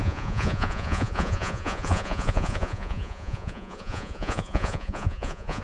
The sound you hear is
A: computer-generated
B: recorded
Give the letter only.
A